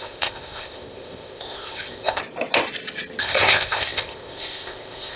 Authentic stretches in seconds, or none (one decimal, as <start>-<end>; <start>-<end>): 2.2-3.2